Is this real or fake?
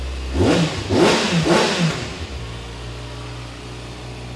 real